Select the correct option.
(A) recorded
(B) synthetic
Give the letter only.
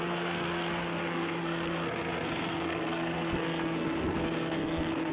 B